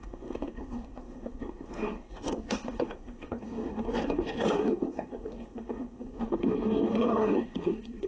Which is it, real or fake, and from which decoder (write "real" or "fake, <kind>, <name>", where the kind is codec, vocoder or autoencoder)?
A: fake, codec, SNAC